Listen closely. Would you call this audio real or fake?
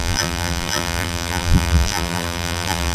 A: fake